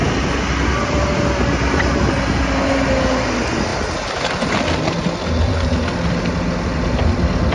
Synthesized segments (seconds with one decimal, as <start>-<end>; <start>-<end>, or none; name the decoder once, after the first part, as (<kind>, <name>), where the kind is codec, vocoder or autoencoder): none